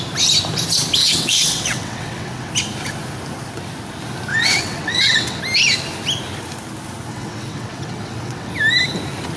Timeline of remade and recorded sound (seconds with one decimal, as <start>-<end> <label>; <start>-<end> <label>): 0.0-1.0 recorded; 1.0-2.5 remade; 2.5-4.3 recorded; 4.3-5.4 remade; 5.4-7.1 recorded; 7.1-8.5 remade; 8.5-9.4 recorded